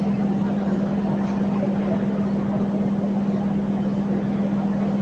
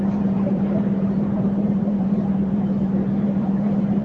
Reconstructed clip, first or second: second